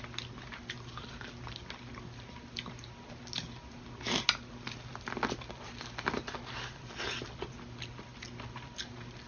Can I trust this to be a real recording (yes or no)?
yes